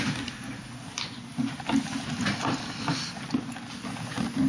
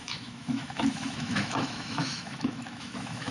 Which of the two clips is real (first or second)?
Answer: first